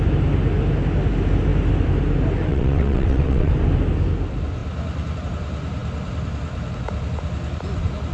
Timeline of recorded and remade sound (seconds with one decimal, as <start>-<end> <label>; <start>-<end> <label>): 0.0-2.5 recorded; 2.5-3.5 remade; 3.5-8.1 recorded